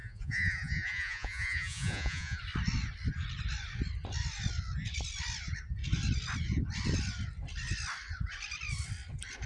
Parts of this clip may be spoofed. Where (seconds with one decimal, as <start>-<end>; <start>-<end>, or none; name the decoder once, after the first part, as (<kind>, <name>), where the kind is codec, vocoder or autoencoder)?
0.0-2.4 (vocoder, Vocos)